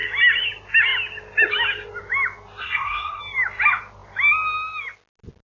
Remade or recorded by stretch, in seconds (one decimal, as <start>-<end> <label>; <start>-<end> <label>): 0.0-2.6 recorded; 2.6-3.2 remade; 3.2-5.5 recorded